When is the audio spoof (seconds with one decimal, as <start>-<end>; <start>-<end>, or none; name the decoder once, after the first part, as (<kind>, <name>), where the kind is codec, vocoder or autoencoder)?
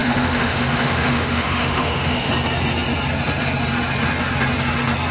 0.0-2.3 (autoencoder, DAC-VAE)